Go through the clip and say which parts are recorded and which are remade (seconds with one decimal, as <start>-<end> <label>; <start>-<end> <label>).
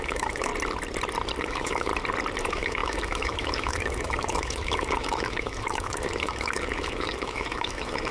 0.0-0.5 remade; 0.5-1.4 recorded; 1.4-1.9 remade; 1.9-2.4 recorded; 2.4-8.1 remade